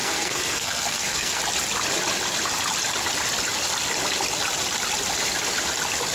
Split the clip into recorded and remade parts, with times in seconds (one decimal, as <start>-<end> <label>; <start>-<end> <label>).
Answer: 0.0-1.4 remade; 1.4-6.1 recorded